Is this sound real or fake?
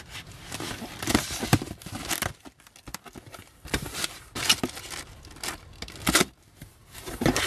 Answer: real